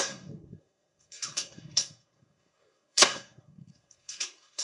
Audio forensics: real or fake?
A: fake